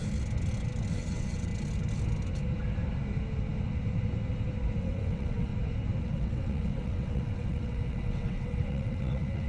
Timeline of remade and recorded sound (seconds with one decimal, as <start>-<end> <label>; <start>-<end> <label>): 0.0-0.9 recorded; 0.9-1.5 remade; 1.5-4.8 recorded; 4.8-5.5 remade; 5.5-6.0 recorded; 6.0-9.5 remade